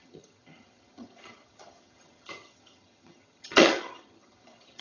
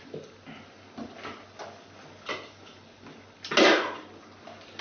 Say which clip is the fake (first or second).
first